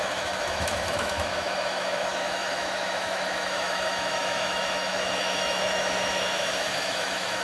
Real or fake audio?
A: fake